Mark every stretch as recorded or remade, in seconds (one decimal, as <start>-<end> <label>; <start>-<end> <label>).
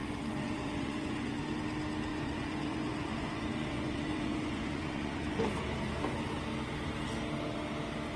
0.0-1.4 remade; 1.4-2.1 recorded; 2.1-5.5 remade; 5.5-8.2 recorded